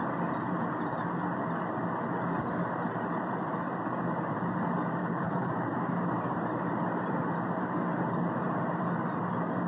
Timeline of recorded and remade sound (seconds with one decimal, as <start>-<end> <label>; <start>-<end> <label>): 0.0-5.0 recorded; 5.0-5.5 remade; 5.5-9.7 recorded